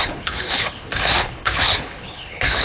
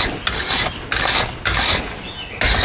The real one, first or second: second